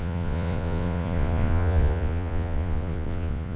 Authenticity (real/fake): fake